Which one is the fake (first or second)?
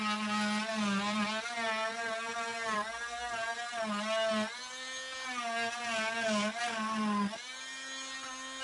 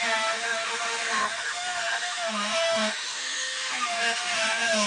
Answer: second